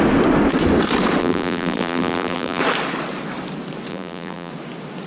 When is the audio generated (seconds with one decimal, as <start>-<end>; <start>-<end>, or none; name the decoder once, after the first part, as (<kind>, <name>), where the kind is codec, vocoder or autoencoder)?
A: 1.2-2.6 (vocoder, BigVGAN v2); 3.9-4.5